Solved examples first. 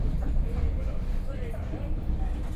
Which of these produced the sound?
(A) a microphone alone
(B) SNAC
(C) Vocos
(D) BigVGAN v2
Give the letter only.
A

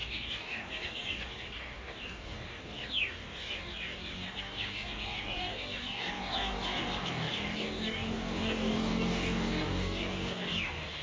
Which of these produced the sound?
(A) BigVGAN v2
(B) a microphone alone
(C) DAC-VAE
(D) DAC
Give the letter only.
D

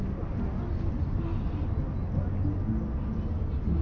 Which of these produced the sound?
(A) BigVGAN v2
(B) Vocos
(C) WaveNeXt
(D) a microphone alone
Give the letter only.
D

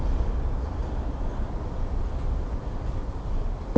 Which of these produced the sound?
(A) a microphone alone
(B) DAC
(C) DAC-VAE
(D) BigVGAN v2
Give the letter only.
D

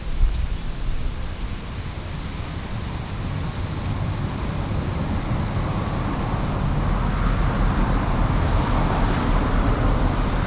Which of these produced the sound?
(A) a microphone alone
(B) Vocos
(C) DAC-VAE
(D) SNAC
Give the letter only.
A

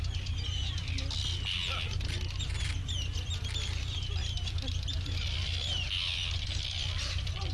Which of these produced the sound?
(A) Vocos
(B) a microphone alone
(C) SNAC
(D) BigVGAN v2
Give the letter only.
B